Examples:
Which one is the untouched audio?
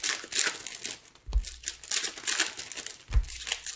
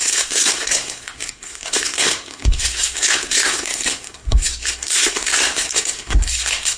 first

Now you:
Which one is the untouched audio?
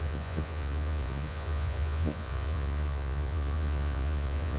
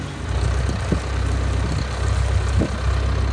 second